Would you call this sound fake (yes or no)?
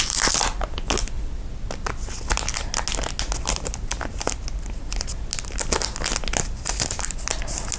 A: no